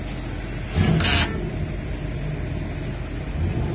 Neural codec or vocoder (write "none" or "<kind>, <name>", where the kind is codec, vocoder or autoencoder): none